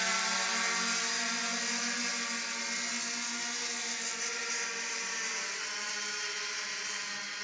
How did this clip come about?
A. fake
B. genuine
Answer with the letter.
B